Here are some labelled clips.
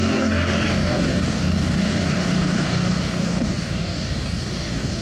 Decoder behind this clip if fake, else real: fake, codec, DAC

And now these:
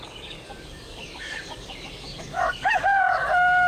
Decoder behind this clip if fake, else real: fake, codec, DAC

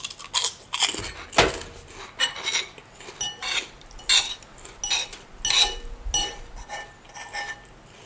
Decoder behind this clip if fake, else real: real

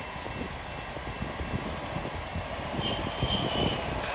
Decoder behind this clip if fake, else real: real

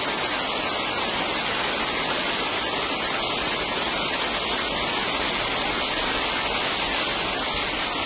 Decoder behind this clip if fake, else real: real